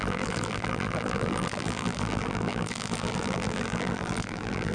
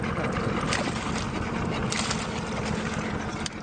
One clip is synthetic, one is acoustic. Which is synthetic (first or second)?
first